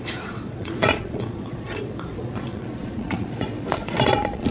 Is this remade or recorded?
remade